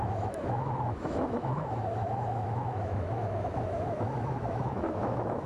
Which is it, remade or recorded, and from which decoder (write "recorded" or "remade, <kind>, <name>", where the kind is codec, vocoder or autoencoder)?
remade, autoencoder, DAC-VAE